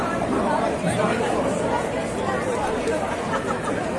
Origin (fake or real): real